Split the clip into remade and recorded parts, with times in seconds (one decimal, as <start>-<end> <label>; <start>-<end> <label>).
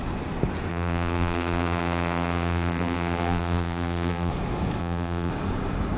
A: 0.0-0.7 recorded; 0.7-4.3 remade; 4.3-4.8 recorded; 4.8-5.3 remade; 5.3-6.0 recorded